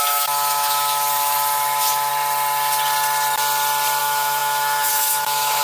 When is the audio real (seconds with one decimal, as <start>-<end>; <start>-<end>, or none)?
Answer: 2.1-4.0